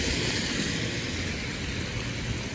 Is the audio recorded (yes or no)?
yes